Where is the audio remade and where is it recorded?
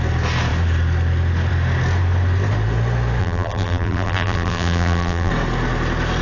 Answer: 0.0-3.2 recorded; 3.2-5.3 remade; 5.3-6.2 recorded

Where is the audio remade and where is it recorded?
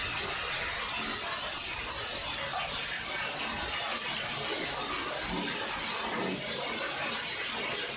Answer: 0.0-8.0 recorded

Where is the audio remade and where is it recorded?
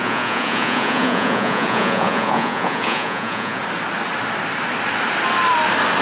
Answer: 0.0-3.6 remade; 3.6-6.0 recorded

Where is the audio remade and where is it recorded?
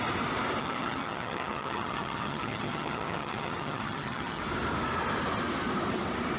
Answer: 0.0-0.6 recorded; 0.6-4.4 remade; 4.4-6.4 recorded